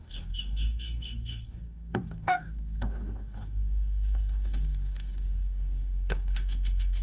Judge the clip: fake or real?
fake